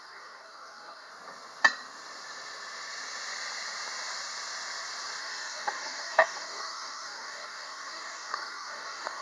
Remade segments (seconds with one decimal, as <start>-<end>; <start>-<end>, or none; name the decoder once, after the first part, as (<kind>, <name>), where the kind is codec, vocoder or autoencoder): 0.0-1.1 (codec, DAC); 5.2-9.2